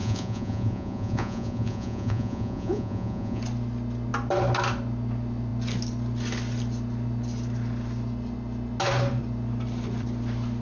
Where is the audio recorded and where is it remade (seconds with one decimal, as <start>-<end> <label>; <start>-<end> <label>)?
0.0-3.4 remade; 3.4-10.6 recorded